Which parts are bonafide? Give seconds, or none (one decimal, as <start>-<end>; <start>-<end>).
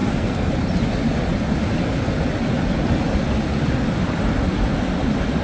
0.5-5.4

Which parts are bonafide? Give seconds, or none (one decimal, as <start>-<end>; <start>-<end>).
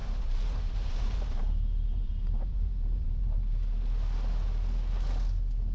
3.4-5.7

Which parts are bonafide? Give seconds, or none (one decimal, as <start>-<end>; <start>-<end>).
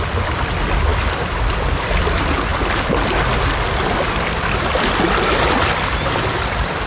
0.0-6.9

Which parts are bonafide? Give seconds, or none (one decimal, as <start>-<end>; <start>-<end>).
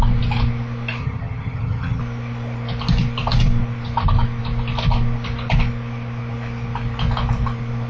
0.0-1.0; 2.0-7.9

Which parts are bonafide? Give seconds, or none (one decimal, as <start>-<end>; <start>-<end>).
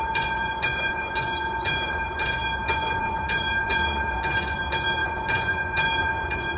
none